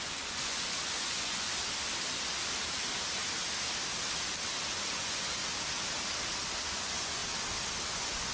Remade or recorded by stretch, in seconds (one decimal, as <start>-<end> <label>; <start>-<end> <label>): 0.0-1.5 remade; 1.5-4.6 recorded; 4.6-5.4 remade; 5.4-6.6 recorded; 6.6-7.2 remade; 7.2-7.9 recorded; 7.9-8.3 remade